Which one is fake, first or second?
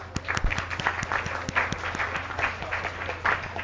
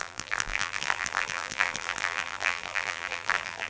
second